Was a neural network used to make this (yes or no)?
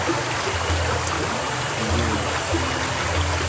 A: no